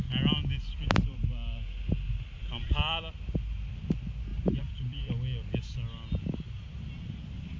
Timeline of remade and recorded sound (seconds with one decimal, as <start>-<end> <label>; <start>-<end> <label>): 0.0-4.3 recorded; 4.3-5.1 remade; 5.1-7.6 recorded